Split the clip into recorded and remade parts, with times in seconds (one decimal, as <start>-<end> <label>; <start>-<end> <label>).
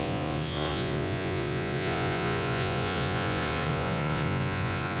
0.0-5.0 remade